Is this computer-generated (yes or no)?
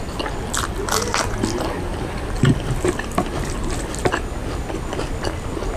no